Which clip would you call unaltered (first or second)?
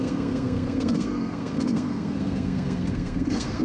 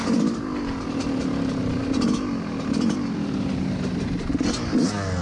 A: second